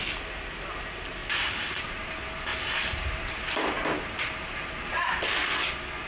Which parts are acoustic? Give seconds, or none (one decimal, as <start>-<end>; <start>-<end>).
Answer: 0.0-1.2; 2.1-2.5; 5.3-6.1